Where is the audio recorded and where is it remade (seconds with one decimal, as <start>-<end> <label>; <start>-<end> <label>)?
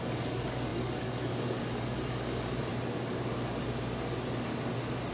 0.0-2.7 remade; 2.7-5.1 recorded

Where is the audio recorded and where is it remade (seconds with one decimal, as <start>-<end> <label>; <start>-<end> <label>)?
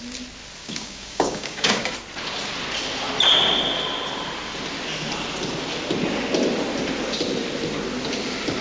0.0-0.6 recorded; 0.6-1.9 remade; 1.9-8.6 recorded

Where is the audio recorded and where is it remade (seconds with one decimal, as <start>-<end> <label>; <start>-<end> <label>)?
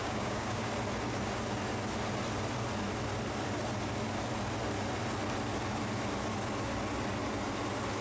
0.0-0.7 remade; 0.7-8.0 recorded